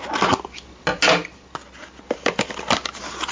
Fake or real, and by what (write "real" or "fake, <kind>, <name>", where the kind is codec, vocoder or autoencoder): real